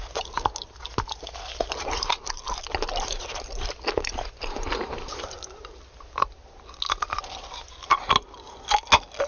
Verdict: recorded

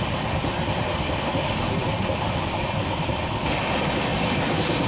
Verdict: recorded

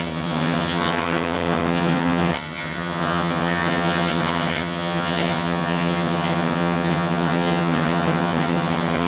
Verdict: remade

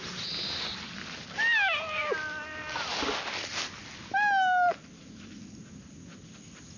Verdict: recorded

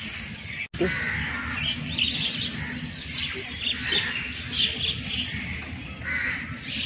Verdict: recorded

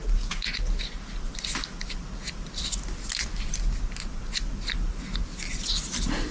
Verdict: recorded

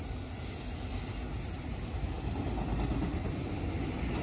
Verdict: recorded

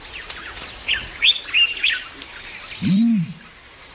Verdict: recorded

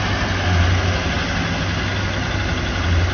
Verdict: recorded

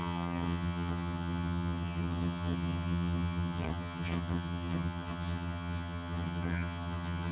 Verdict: remade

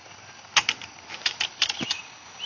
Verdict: recorded